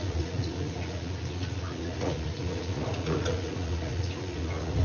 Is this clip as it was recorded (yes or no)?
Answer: no